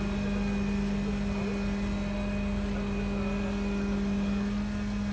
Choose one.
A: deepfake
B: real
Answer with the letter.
B